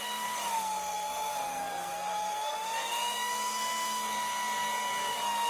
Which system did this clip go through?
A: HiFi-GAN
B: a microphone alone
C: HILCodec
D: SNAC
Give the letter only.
D